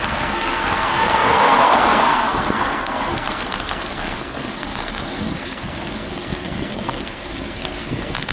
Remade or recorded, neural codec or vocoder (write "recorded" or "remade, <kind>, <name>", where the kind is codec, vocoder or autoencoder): remade, codec, SNAC